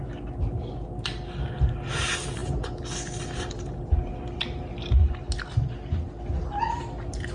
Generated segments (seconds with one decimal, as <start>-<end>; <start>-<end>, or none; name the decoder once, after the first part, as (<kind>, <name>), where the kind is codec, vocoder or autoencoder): none